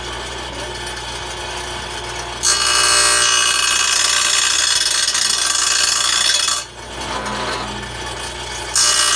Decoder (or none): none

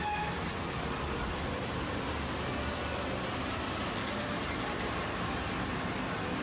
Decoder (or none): none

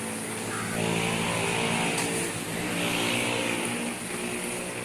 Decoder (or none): vocoder, BigVGAN v2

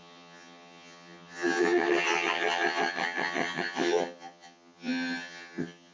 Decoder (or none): vocoder, HiFi-GAN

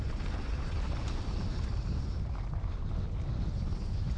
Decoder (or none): none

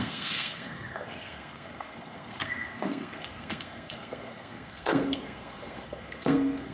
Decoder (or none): codec, SNAC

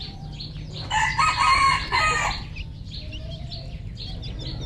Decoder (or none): none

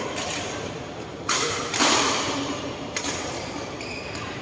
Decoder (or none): vocoder, BigVGAN v2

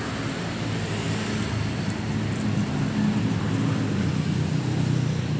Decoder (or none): none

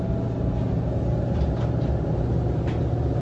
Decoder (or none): none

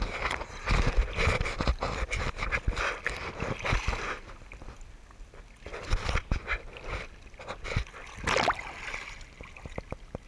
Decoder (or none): none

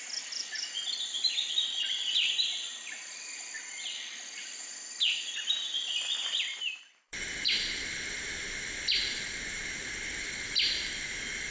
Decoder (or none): vocoder, BigVGAN v2